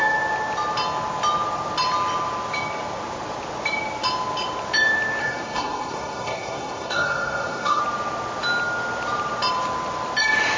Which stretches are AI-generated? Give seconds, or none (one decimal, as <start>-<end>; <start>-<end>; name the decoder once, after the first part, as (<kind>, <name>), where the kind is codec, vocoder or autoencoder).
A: 5.2-7.8 (codec, SNAC)